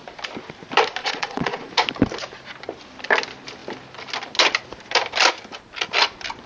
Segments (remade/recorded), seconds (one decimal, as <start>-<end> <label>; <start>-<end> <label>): 0.0-1.0 recorded; 1.0-1.7 remade; 1.7-6.5 recorded